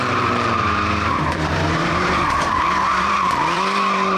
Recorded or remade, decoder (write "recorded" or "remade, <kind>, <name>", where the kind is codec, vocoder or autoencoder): remade, vocoder, BigVGAN v2